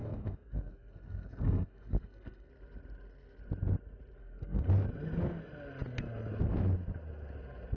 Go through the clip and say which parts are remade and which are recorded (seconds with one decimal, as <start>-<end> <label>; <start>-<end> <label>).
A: 0.0-2.5 remade; 2.5-4.2 recorded; 4.2-4.7 remade; 4.7-7.8 recorded